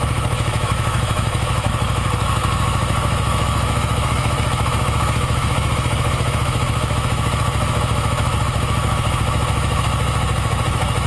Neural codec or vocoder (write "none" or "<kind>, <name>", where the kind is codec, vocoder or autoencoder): autoencoder, DAC-VAE